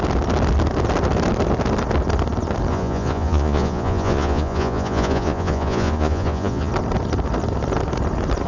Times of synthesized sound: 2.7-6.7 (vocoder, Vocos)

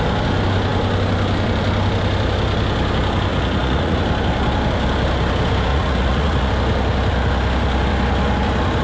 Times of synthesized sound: 3.3-4.0 (vocoder, Vocos); 5.7-6.5

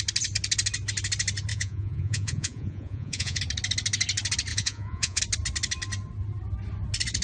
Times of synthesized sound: 1.5-3.4 (vocoder, Vocos); 4.5-5.2

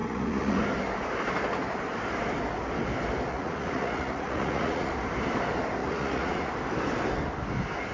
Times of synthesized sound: 0.0-0.6 (vocoder, Vocos); 3.3-4.9; 5.8-6.5